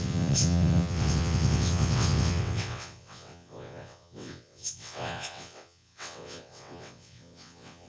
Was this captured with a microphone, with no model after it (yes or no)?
no